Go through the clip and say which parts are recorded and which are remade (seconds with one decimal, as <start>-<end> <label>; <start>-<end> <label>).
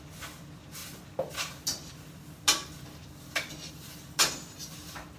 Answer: 0.0-5.2 recorded